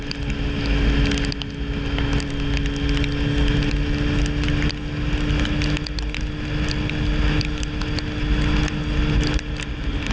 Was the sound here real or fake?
real